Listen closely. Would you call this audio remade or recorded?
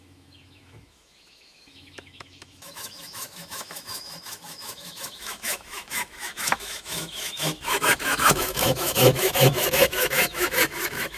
remade